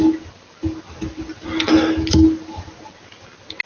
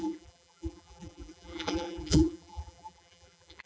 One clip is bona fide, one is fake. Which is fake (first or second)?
second